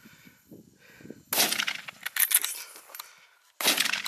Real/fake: real